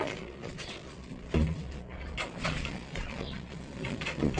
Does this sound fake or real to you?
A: fake